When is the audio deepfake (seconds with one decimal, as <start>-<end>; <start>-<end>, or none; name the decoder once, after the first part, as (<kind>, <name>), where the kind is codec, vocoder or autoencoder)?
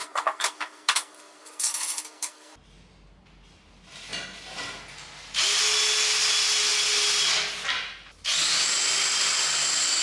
0.0-2.5 (codec, SNAC)